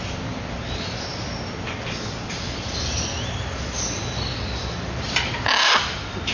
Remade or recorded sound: recorded